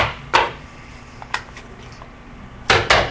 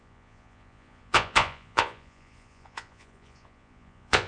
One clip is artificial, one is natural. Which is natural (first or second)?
first